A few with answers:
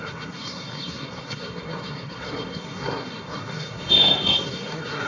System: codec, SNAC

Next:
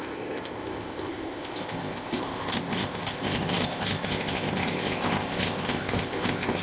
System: codec, ZipCodec